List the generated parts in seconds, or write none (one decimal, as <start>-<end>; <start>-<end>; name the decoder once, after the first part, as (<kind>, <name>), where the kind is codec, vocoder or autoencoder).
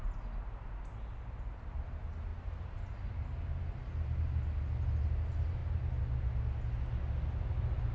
none